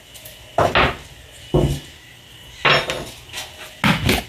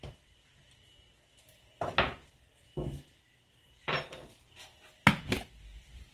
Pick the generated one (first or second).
second